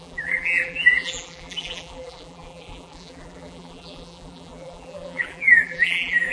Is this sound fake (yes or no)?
yes